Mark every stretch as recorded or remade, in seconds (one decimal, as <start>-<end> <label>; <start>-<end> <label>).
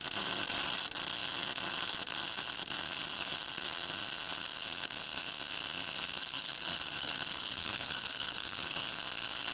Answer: 0.0-6.2 recorded; 6.2-8.8 remade; 8.8-9.5 recorded